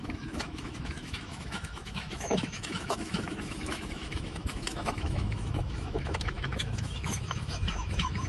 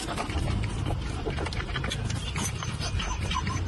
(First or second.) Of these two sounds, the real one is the second